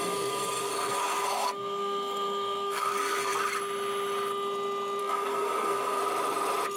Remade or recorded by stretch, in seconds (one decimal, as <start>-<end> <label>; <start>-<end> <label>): 0.0-3.3 remade; 3.3-5.0 recorded; 5.0-6.0 remade; 6.0-6.8 recorded